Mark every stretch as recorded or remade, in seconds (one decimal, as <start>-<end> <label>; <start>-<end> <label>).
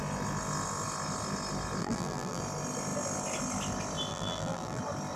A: 0.0-1.8 recorded; 1.8-2.4 remade; 2.4-4.1 recorded; 4.1-4.8 remade; 4.8-5.2 recorded